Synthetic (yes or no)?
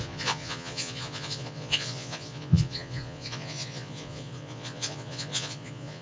yes